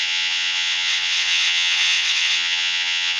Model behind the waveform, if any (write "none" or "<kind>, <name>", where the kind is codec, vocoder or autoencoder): vocoder, WaveNeXt